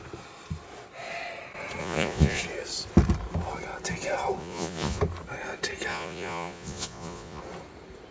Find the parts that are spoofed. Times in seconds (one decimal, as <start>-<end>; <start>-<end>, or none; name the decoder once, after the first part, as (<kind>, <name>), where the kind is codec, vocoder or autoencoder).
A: 1.8-2.4 (vocoder, Vocos); 4.4-5.0; 5.9-7.4